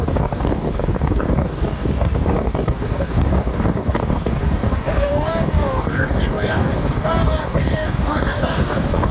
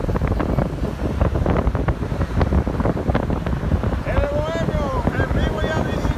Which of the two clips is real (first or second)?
second